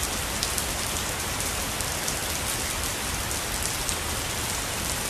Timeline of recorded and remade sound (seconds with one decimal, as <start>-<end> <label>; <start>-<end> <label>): 0.0-5.1 recorded